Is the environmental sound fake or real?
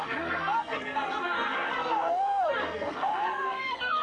fake